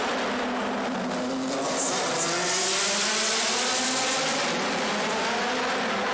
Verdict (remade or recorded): recorded